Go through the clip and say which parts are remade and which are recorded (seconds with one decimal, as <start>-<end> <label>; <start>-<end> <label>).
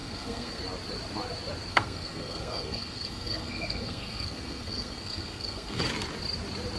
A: 0.0-0.6 remade; 0.6-1.7 recorded; 1.7-5.8 remade; 5.8-6.8 recorded